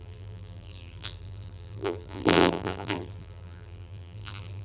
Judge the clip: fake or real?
fake